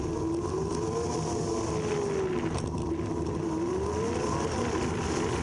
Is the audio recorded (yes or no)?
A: yes